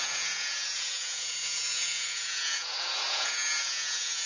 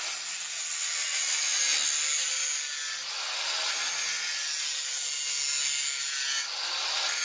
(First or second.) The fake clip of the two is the first